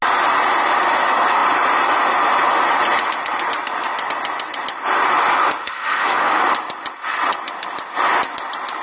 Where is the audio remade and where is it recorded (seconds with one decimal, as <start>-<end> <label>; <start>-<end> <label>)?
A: 0.0-5.6 recorded; 5.6-6.4 remade; 6.4-8.8 recorded